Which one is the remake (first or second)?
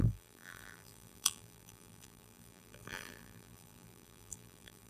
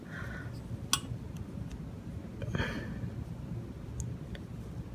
first